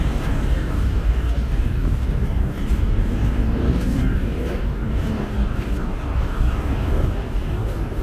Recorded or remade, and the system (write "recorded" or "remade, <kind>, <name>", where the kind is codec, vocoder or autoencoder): remade, codec, DAC